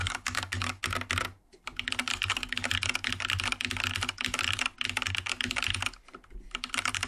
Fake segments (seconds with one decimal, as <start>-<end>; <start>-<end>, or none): 0.0-0.8; 2.1-2.7